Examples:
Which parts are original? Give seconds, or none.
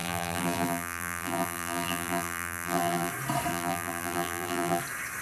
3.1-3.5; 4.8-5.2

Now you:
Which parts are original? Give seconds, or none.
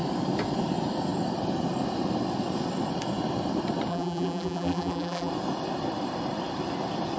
0.0-3.9; 5.3-7.2